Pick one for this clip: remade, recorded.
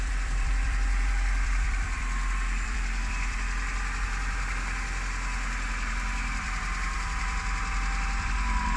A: remade